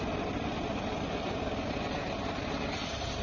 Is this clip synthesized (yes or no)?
no